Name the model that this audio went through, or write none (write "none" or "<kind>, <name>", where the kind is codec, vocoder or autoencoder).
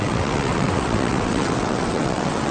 vocoder, WaveNeXt